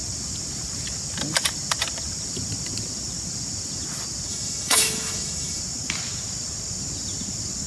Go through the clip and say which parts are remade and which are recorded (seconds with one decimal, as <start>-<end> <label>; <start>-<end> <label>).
0.0-4.3 recorded; 4.3-5.6 remade; 5.6-7.7 recorded